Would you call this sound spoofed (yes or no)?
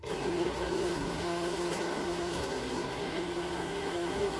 yes